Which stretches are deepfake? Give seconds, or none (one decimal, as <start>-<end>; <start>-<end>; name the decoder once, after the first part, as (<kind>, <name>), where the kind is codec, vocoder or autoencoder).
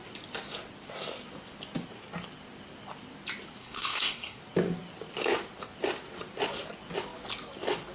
3.6-4.4 (codec, SNAC)